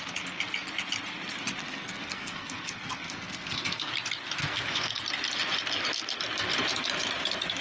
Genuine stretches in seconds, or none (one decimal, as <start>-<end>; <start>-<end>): 0.0-1.6; 3.9-4.4; 5.0-7.6

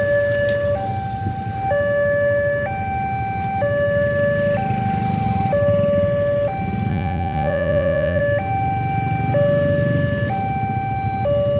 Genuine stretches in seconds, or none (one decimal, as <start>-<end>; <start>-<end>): 0.0-6.9; 8.2-11.6

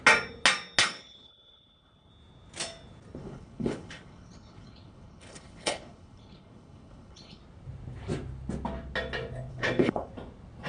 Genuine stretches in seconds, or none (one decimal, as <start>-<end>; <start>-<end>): 0.0-0.8; 2.1-3.2; 7.4-9.5; 10.1-10.7

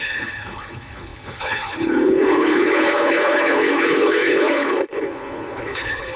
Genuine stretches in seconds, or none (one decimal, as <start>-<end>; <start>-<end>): none

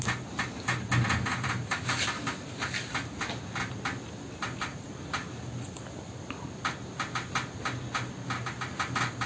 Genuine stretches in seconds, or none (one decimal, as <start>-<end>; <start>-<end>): 0.0-1.3; 2.7-4.7; 6.2-9.3

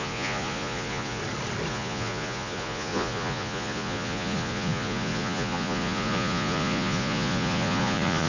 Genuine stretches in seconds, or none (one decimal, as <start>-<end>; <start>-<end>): 1.2-1.7